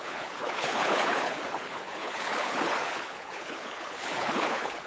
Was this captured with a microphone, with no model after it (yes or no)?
no